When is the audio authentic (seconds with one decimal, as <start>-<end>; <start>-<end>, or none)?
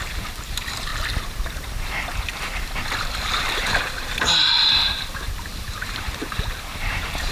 0.9-3.2